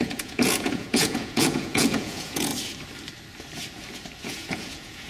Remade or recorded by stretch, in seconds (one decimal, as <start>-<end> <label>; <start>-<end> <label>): 0.0-2.5 remade; 2.5-4.2 recorded; 4.2-5.1 remade